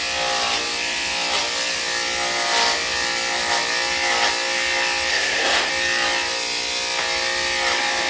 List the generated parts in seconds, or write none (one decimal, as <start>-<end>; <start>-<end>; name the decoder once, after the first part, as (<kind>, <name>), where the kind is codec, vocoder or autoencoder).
5.1-5.7 (codec, SNAC)

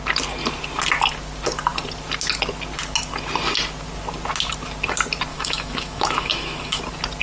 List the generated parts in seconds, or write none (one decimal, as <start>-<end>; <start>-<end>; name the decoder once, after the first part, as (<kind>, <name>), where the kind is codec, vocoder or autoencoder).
5.3-6.8 (autoencoder, DAC-VAE)

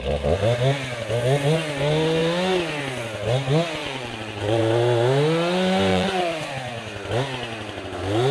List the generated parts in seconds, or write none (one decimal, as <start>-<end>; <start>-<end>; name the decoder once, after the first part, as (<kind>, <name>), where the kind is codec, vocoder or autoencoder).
3.8-4.6 (vocoder, Vocos); 5.9-6.5

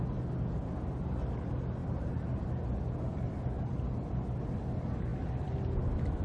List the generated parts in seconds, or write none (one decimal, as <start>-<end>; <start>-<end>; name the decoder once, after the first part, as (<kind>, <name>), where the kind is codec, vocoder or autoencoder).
none

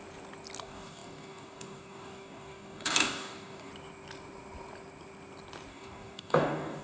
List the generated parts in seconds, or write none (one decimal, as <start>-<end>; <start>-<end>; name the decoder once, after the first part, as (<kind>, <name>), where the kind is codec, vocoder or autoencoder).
0.6-3.7 (codec, DAC); 5.7-6.8

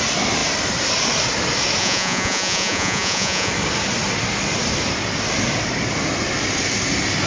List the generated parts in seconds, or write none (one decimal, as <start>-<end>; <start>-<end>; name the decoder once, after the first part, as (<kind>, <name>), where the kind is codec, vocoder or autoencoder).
1.8-3.5 (vocoder, Vocos)